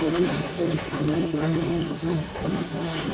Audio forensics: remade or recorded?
remade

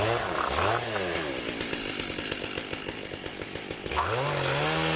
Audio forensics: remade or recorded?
recorded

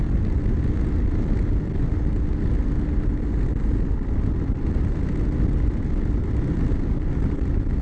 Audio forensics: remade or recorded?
recorded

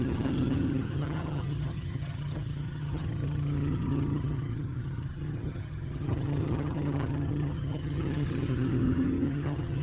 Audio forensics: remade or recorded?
remade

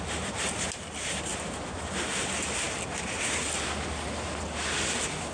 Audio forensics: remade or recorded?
recorded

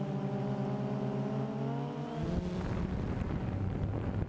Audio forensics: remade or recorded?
recorded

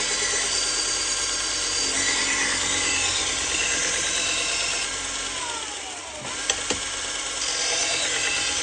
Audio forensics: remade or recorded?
recorded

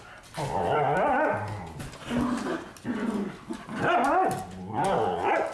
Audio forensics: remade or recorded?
recorded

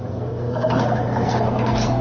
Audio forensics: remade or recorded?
remade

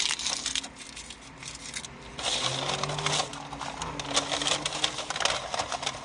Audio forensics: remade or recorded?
recorded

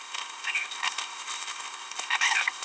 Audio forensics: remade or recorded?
remade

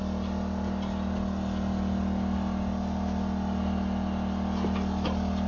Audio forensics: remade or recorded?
recorded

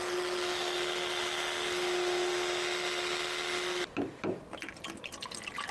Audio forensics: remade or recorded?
recorded